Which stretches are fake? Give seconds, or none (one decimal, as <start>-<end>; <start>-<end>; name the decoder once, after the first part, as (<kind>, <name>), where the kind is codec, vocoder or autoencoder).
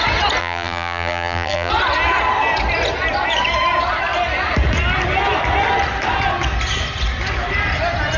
0.4-1.7 (vocoder, BigVGAN v2)